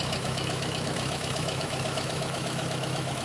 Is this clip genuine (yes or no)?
no